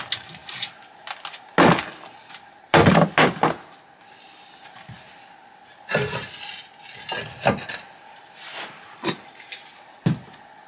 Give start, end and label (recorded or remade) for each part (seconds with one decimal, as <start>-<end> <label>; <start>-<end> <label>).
0.0-10.7 recorded